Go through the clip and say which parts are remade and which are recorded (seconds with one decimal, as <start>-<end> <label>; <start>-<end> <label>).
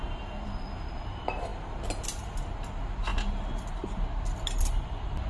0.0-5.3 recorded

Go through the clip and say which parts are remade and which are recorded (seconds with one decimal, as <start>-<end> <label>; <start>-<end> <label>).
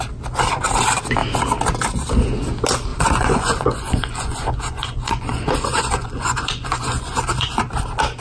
0.0-2.9 recorded; 2.9-7.6 remade; 7.6-8.2 recorded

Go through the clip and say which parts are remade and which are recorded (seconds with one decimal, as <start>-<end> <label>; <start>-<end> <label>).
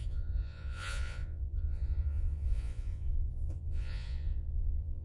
0.0-5.0 remade